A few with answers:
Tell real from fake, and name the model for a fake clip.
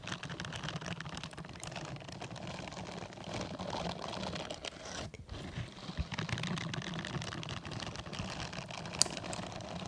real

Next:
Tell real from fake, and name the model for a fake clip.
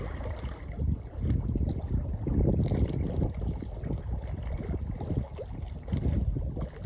real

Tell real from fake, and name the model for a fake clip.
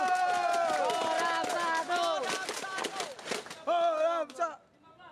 real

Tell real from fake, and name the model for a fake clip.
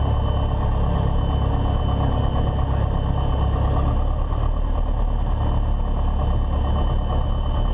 real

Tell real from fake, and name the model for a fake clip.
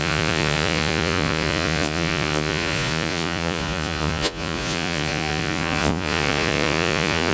fake, vocoder, Vocos